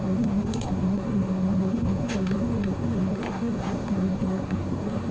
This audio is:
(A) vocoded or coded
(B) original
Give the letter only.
A